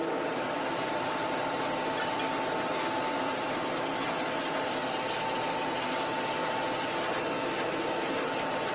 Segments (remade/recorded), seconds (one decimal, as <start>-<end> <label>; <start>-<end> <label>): 0.0-8.7 recorded